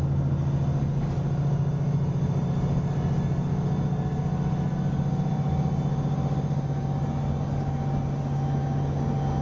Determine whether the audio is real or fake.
real